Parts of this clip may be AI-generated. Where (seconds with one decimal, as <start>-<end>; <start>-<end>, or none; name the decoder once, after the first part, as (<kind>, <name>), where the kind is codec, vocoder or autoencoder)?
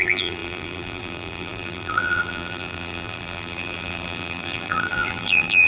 0.0-5.7 (vocoder, BigVGAN v2)